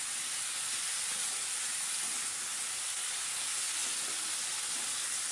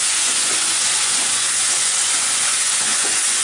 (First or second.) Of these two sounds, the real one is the first